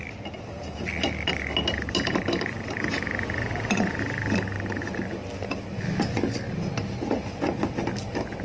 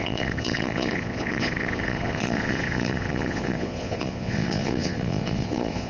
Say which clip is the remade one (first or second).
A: second